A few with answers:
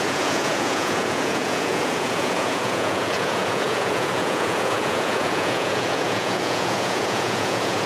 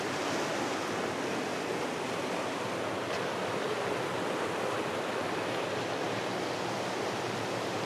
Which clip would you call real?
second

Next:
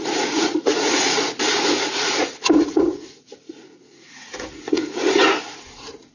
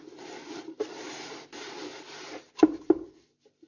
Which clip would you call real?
second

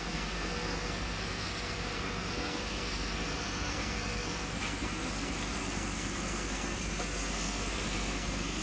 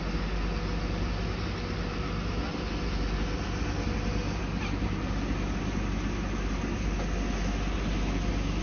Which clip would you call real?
second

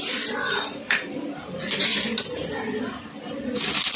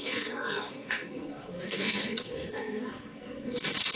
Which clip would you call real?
first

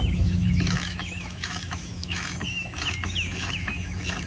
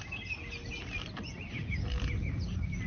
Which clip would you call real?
second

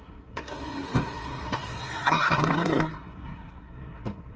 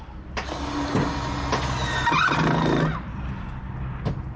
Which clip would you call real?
second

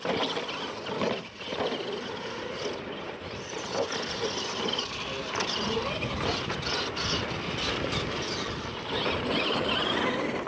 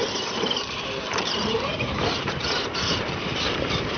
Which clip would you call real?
first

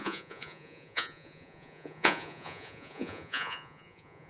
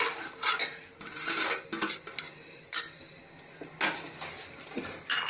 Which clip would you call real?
second